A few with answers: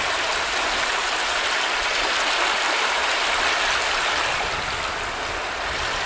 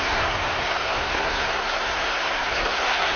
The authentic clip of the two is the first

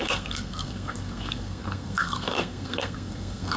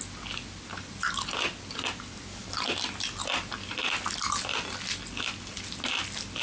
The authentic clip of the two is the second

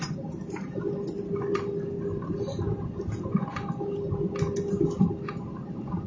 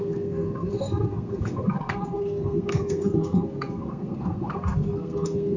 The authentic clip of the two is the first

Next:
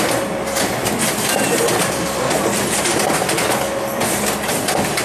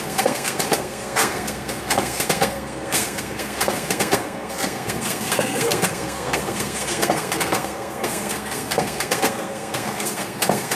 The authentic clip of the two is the first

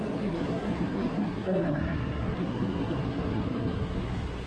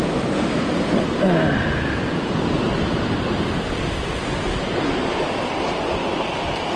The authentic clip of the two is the second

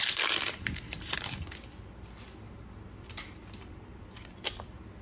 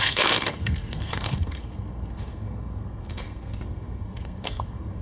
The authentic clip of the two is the first